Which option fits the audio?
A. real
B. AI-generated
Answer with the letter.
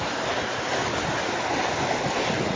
A